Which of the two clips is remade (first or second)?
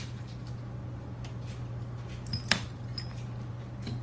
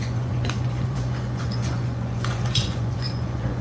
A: second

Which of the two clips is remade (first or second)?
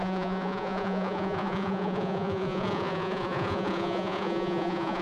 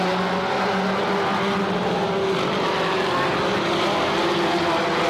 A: first